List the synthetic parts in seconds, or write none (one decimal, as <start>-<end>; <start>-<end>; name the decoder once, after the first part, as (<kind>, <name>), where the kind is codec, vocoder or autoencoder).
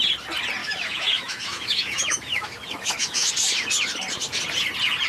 0.6-3.3 (autoencoder, DAC-VAE)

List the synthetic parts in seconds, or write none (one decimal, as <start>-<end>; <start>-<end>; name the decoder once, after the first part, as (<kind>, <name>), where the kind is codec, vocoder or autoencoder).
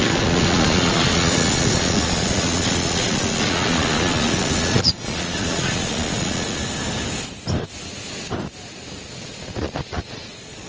0.0-6.6 (vocoder, Vocos); 9.1-10.7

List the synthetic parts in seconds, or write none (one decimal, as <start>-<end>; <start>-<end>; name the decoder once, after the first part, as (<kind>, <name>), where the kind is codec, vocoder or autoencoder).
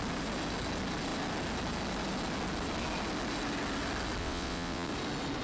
4.2-4.9 (vocoder, WaveNeXt)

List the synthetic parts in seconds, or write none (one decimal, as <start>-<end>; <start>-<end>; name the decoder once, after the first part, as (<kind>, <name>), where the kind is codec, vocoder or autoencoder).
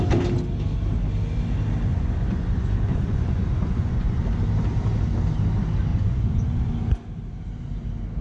1.9-4.2 (vocoder, Vocos); 5.9-6.7